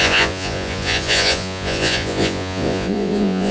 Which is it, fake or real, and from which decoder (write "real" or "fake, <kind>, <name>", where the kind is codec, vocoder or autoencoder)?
fake, vocoder, Vocos